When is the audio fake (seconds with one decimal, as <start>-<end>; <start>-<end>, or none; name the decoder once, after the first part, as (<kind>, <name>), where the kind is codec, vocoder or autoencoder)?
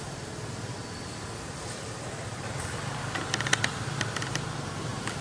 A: none